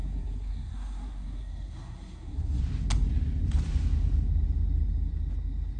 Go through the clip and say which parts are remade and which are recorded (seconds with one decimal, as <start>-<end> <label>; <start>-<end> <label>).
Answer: 0.0-2.6 remade; 2.6-5.8 recorded